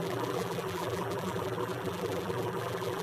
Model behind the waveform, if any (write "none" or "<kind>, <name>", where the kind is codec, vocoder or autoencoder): vocoder, BigVGAN v2